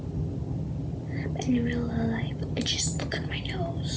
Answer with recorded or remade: recorded